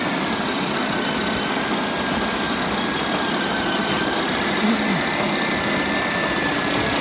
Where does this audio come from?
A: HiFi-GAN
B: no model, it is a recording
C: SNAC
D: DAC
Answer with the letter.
B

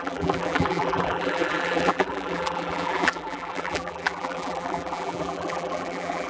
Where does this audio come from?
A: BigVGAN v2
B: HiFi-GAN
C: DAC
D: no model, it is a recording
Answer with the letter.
A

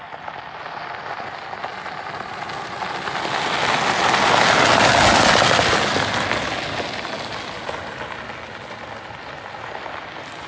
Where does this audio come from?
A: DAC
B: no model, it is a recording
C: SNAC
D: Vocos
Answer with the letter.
B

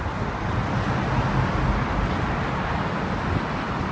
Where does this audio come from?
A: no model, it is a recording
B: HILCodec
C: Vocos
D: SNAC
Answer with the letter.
A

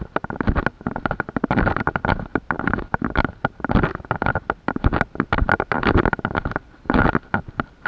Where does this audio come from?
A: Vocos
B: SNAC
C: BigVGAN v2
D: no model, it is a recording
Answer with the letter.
D